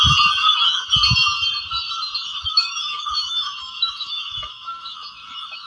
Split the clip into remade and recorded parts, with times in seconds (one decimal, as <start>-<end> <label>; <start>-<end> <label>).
0.0-0.4 recorded; 0.4-0.9 remade; 0.9-2.3 recorded; 2.3-5.7 remade